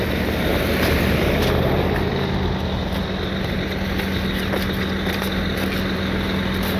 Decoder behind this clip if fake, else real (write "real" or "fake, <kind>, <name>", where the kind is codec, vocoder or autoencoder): real